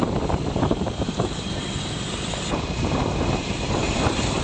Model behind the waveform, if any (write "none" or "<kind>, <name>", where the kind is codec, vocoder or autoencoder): vocoder, BigVGAN v2